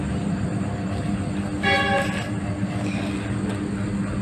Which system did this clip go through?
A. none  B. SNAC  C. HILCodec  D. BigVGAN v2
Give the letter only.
A